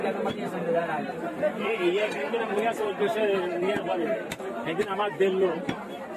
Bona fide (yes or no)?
yes